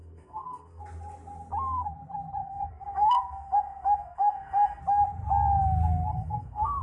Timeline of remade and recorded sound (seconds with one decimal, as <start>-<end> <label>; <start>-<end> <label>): 0.0-0.8 remade; 0.8-2.4 recorded; 2.4-4.8 remade; 4.8-6.1 recorded; 6.1-6.8 remade